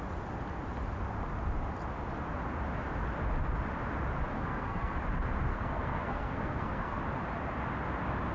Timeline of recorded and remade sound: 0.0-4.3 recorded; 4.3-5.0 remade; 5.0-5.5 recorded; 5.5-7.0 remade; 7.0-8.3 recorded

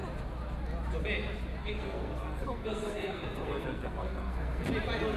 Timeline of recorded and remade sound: 0.0-1.6 recorded; 1.6-4.7 remade; 4.7-5.2 recorded

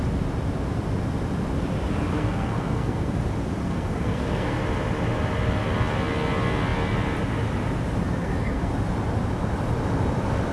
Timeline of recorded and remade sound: 0.0-2.1 recorded; 2.1-3.2 remade; 3.2-3.6 recorded; 3.6-4.6 remade; 4.6-8.2 recorded; 8.2-8.7 remade; 8.7-10.5 recorded

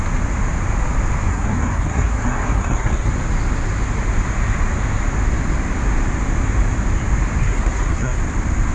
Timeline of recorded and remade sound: 0.0-1.3 recorded; 1.3-3.1 remade; 3.1-7.4 recorded; 7.4-8.2 remade; 8.2-8.7 recorded

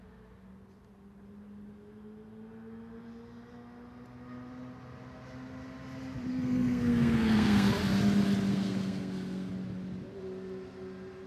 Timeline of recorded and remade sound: 0.0-6.3 recorded; 6.3-7.7 remade; 7.7-8.5 recorded; 8.5-9.5 remade; 9.5-11.3 recorded